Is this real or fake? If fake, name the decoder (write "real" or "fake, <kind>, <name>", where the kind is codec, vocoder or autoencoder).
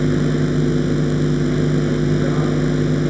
real